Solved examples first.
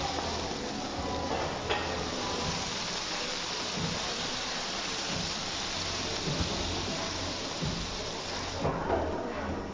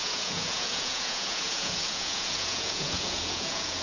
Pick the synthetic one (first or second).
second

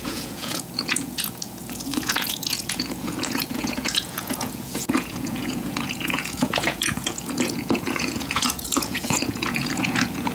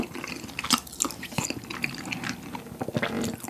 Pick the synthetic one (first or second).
first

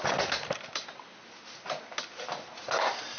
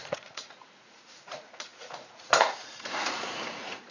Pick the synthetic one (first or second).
second